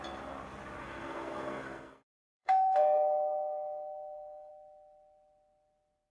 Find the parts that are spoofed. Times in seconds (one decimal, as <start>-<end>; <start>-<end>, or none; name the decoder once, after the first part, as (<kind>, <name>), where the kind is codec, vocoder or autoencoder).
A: 0.8-4.5 (codec, SNAC)